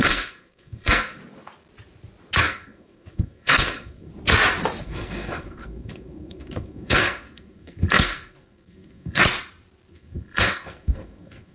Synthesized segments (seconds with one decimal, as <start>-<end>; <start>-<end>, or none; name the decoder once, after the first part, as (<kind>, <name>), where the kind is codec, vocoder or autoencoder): 0.0-1.2 (codec, SNAC); 2.4-4.1; 4.8-9.2; 9.9-11.5